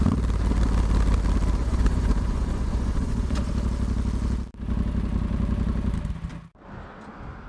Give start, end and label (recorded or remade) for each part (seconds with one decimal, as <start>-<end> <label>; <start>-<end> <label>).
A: 0.0-1.6 recorded; 1.6-3.5 remade; 3.5-7.5 recorded